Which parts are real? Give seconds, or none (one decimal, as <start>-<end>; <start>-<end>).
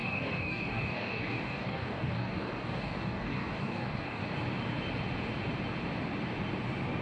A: 4.2-7.0